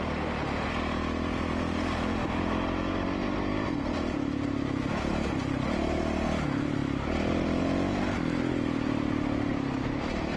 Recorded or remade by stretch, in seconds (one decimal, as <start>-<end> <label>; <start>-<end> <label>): 0.0-10.4 recorded